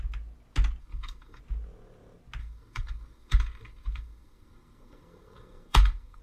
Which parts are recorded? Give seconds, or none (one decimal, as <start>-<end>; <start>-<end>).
0.0-0.8; 1.4-2.4